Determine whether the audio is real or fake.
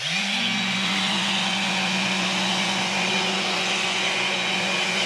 fake